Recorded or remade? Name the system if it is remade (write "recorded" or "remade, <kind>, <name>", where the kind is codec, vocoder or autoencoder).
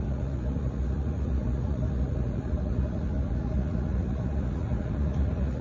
remade, vocoder, Vocos